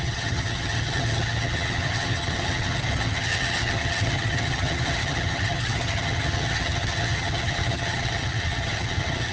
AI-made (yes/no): yes